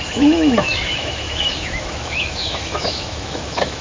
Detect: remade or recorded remade